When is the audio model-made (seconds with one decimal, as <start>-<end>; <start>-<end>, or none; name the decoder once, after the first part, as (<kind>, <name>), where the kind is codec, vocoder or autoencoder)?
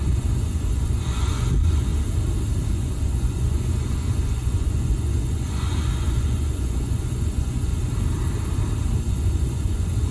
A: 0.0-1.9 (vocoder, Vocos); 2.7-7.7; 9.0-10.1